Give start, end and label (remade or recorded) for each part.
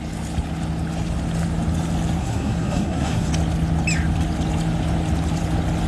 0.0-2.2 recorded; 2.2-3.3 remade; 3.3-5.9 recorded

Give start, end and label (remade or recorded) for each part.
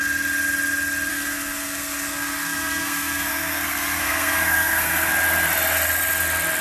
0.0-1.1 recorded; 1.1-5.1 remade; 5.1-6.6 recorded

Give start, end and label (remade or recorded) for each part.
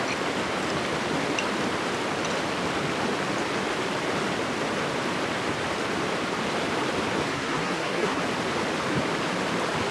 0.0-7.3 recorded; 7.3-8.2 remade; 8.2-9.9 recorded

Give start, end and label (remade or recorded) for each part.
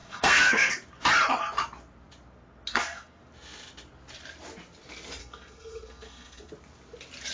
0.0-0.7 remade; 0.7-2.7 recorded; 2.7-3.2 remade; 3.2-5.2 recorded; 5.2-6.5 remade; 6.5-7.3 recorded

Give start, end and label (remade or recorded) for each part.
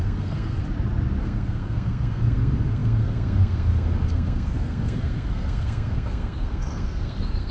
0.0-0.6 remade; 0.6-1.2 recorded; 1.2-7.5 remade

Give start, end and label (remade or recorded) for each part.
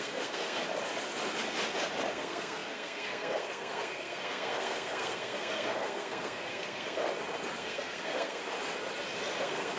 0.0-0.6 remade; 0.6-2.1 recorded; 2.1-7.0 remade; 7.0-7.6 recorded; 7.6-8.4 remade; 8.4-9.4 recorded; 9.4-9.8 remade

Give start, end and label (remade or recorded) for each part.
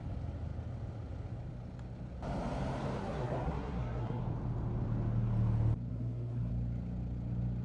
0.0-3.0 recorded; 3.0-4.2 remade; 4.2-5.9 recorded; 5.9-6.5 remade; 6.5-7.6 recorded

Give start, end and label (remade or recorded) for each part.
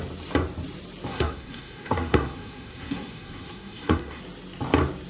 0.0-1.1 recorded; 1.1-4.2 remade; 4.2-5.1 recorded